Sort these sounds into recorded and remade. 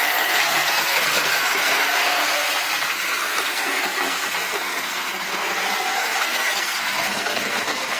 remade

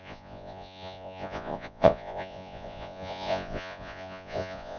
remade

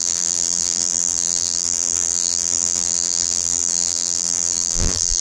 remade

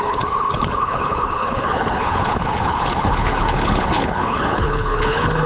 remade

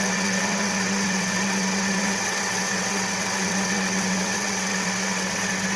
remade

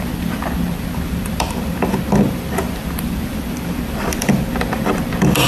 remade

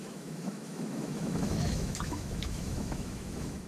remade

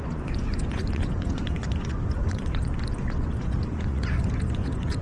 remade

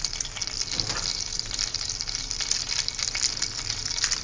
recorded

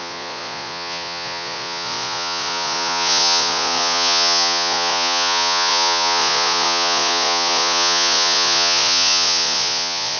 remade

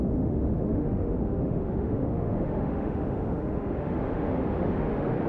remade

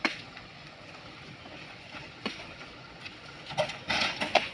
remade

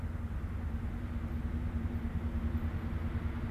recorded